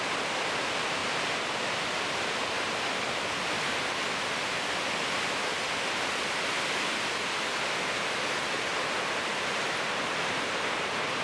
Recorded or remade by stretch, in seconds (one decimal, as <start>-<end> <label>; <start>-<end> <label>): 0.0-11.2 recorded